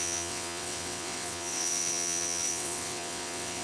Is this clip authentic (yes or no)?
no